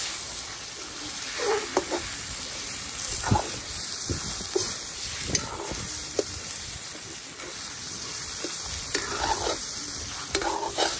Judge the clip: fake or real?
real